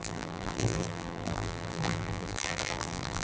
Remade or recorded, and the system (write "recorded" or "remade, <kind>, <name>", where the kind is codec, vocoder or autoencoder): remade, vocoder, BigVGAN v2